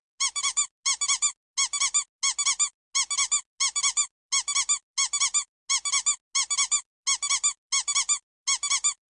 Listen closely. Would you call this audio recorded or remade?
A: recorded